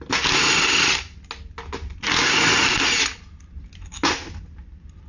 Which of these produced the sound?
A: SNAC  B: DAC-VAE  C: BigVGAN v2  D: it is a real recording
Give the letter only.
D